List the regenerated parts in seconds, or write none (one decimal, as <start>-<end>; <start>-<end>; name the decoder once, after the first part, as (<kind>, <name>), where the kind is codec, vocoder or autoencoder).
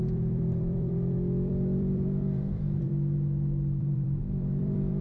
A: 0.0-2.9 (vocoder, BigVGAN v2); 3.8-5.0